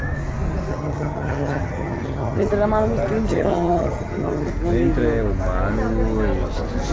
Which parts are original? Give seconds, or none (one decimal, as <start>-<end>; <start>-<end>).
0.0-0.7; 2.5-3.3; 4.5-6.9